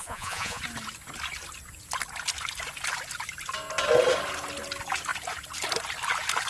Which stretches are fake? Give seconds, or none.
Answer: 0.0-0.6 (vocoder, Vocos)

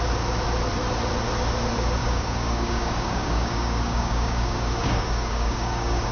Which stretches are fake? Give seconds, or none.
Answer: 2.0-6.1 (codec, DAC)

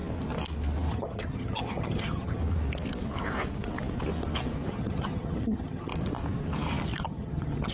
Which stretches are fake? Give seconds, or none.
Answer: 0.9-2.4 (vocoder, HiFi-GAN); 4.7-5.9; 7.0-7.7